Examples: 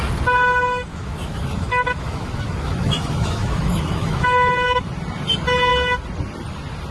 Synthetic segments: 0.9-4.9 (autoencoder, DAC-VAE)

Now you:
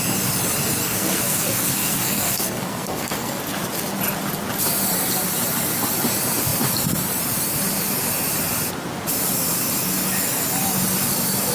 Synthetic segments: 0.8-3.4 (codec, SNAC)

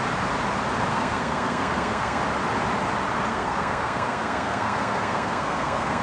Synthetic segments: 0.9-2.2 (codec, SNAC); 3.3-6.0

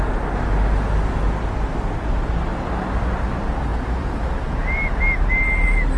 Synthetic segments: none